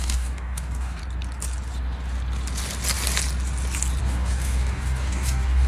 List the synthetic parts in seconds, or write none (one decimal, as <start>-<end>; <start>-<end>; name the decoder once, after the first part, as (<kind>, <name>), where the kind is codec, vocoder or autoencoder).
0.0-1.0 (codec, DAC); 4.0-5.7